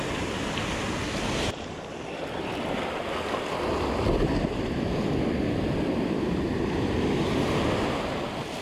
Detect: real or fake real